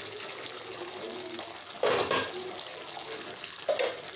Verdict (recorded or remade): recorded